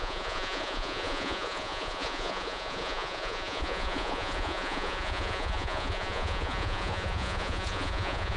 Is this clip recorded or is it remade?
remade